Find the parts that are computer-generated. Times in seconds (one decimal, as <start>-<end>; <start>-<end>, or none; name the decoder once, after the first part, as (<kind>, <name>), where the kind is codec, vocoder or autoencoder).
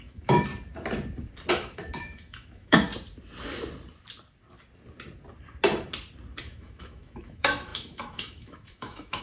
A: 0.0-0.5 (autoencoder, DAC-VAE); 1.5-2.9; 6.4-9.2